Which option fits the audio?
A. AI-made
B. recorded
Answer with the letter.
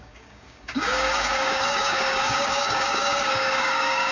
A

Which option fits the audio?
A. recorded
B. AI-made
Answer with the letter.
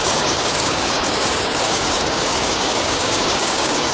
B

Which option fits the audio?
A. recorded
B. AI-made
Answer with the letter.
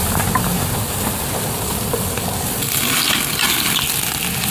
A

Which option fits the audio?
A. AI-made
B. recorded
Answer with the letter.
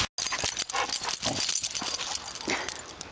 B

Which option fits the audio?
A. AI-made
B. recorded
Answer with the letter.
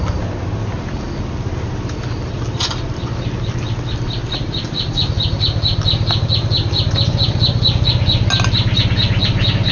B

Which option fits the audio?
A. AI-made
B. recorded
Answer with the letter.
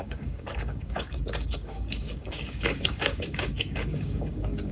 A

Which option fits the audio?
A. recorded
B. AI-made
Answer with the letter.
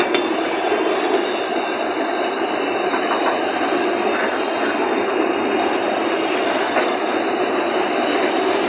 A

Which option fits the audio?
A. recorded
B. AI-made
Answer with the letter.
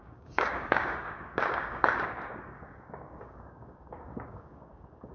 B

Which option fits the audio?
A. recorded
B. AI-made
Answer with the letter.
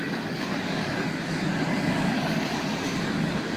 B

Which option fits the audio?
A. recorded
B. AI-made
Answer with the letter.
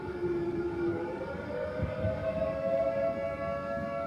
B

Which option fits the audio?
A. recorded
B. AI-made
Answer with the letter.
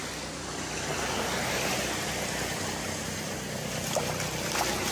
A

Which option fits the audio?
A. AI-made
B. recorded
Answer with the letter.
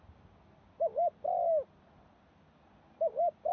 B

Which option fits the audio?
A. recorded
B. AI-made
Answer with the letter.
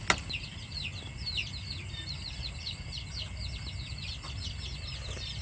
A